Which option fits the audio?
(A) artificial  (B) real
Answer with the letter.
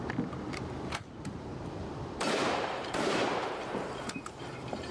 A